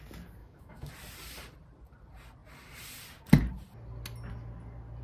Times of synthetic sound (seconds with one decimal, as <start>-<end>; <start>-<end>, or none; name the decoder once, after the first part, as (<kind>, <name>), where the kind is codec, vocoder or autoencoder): 0.4-0.9 (autoencoder, DAC-VAE)